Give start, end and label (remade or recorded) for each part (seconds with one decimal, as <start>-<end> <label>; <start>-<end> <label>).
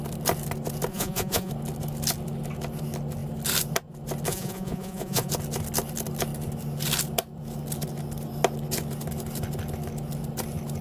0.0-0.9 recorded; 0.9-1.5 remade; 1.5-4.3 recorded; 4.3-5.3 remade; 5.3-10.8 recorded